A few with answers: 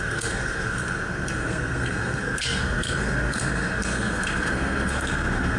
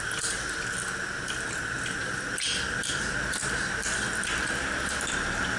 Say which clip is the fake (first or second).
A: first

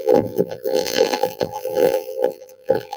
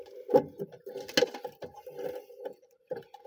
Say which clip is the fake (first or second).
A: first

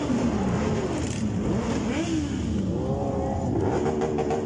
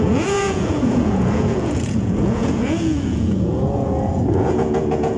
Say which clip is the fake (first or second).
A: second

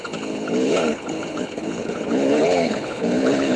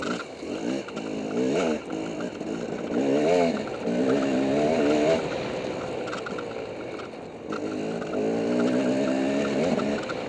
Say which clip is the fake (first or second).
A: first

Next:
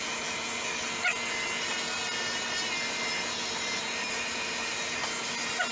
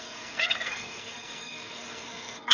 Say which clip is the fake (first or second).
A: second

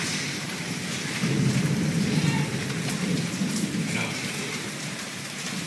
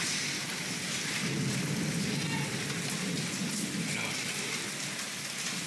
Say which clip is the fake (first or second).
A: first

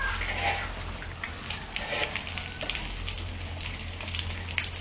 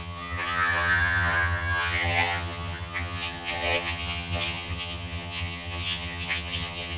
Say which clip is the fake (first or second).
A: second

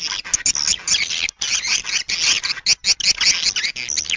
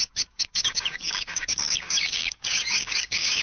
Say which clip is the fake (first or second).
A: second